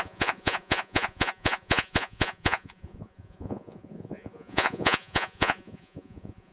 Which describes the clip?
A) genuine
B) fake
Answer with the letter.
B